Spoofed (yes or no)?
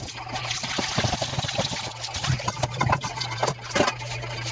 no